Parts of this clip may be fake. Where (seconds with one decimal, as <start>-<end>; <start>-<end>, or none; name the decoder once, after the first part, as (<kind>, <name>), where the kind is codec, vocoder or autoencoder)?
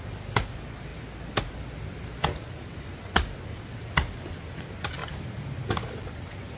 5.0-6.6 (vocoder, BigVGAN v2)